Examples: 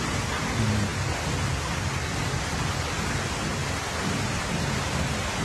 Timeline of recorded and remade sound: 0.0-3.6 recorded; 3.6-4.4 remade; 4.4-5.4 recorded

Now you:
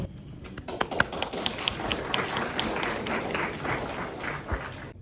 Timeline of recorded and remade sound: 0.0-5.0 recorded

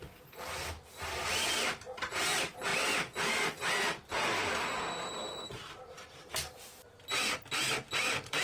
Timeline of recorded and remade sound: 0.0-8.4 recorded

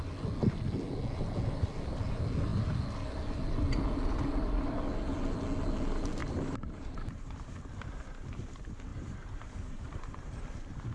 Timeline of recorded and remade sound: 0.0-6.2 recorded; 6.2-7.6 remade; 7.6-8.9 recorded; 8.9-10.4 remade; 10.4-10.9 recorded